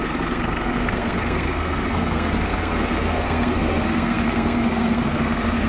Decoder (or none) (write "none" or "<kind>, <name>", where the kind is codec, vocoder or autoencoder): codec, SNAC